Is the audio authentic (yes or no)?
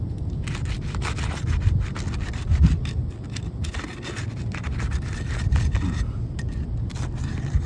yes